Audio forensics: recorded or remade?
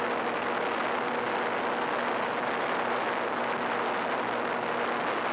recorded